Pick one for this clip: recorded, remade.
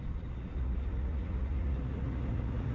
remade